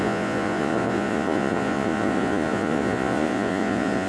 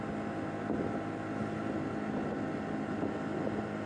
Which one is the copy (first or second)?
first